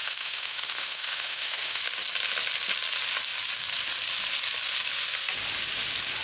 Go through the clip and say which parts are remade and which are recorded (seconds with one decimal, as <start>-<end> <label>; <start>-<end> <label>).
0.0-1.8 remade; 1.8-6.2 recorded